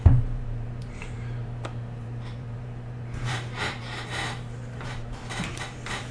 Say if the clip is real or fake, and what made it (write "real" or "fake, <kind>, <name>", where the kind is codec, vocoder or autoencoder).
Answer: fake, vocoder, BigVGAN v2